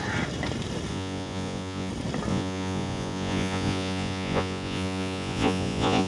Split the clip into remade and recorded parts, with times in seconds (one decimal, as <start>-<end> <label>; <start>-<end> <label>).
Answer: 0.0-0.9 recorded; 0.9-1.9 remade; 1.9-2.3 recorded; 2.3-6.1 remade